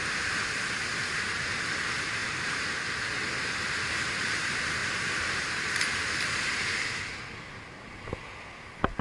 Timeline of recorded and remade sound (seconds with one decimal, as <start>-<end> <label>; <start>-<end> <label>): 0.0-9.0 recorded